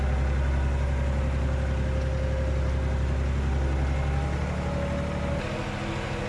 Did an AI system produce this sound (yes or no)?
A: no